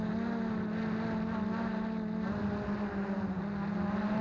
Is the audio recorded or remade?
recorded